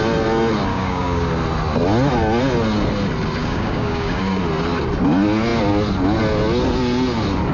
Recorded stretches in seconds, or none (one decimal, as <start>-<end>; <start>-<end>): 0.0-0.7; 1.3-3.4; 4.2-7.5